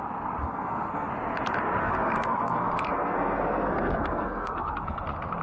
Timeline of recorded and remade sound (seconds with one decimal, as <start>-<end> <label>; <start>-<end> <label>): 0.0-0.4 recorded; 0.4-1.1 remade; 1.1-1.8 recorded; 1.8-5.0 remade; 5.0-5.4 recorded

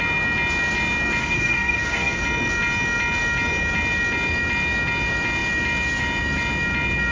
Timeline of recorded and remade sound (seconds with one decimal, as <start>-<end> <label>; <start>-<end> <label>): 0.0-1.2 recorded; 1.2-2.2 remade; 2.2-7.1 recorded

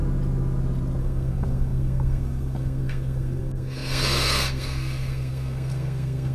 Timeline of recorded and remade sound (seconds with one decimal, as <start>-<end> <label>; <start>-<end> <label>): 0.0-1.0 recorded; 1.0-6.3 remade

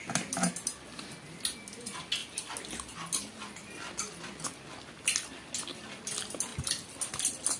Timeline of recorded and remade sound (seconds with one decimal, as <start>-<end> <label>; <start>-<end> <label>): 0.0-7.6 recorded

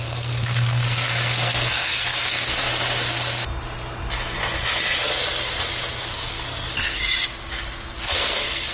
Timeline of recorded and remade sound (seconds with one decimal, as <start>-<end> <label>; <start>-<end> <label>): 0.0-2.7 remade; 2.7-6.0 recorded; 6.0-7.0 remade; 7.0-8.0 recorded; 8.0-8.7 remade

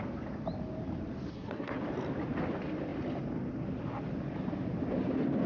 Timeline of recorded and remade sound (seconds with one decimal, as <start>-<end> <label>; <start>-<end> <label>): 0.0-1.3 recorded; 1.3-1.8 remade; 1.8-5.5 recorded

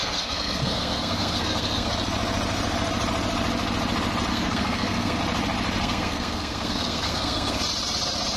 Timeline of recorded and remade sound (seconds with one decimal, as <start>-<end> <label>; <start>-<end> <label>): 0.0-1.9 remade; 1.9-4.3 recorded; 4.3-5.2 remade; 5.2-5.8 recorded; 5.8-7.6 remade; 7.6-8.4 recorded

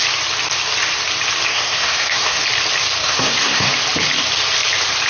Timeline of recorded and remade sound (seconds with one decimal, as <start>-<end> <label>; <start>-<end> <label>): 0.0-1.5 recorded; 1.5-2.4 remade; 2.4-3.0 recorded; 3.0-3.7 remade; 3.7-5.1 recorded